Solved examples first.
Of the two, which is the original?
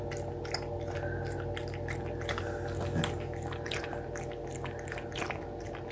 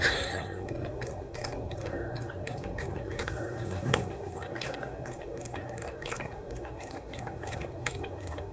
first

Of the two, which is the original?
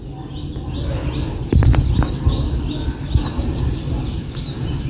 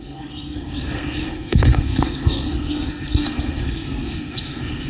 first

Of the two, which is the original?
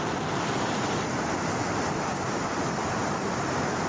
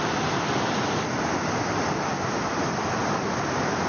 second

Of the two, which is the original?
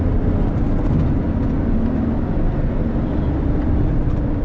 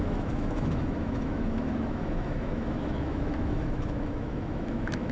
first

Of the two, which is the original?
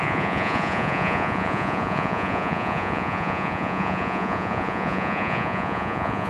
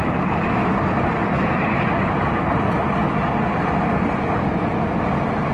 second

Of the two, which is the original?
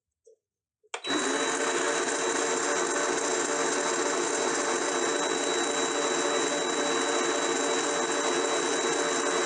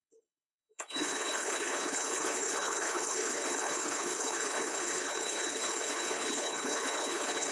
first